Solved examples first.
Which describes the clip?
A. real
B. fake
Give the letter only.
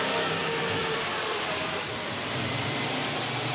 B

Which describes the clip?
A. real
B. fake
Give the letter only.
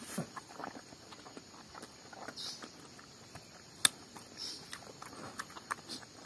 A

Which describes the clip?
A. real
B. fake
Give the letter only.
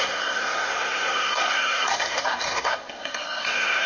B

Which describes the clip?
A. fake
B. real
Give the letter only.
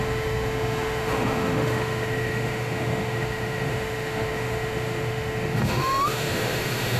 A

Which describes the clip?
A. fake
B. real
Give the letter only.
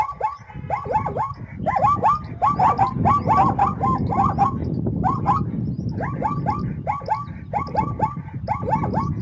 B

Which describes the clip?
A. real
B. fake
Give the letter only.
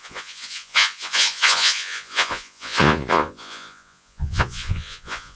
B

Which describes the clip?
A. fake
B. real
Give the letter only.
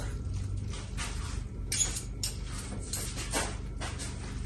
B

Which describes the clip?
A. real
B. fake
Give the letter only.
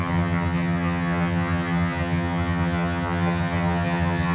B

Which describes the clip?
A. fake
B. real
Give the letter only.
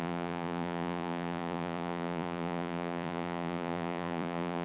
A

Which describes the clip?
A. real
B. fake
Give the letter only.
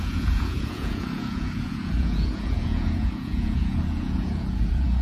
B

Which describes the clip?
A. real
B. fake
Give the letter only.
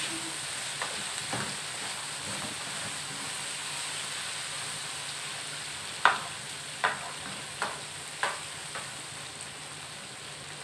A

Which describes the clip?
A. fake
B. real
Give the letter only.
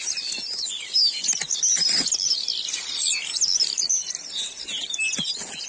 B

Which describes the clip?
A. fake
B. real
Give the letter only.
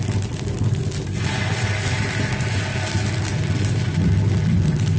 B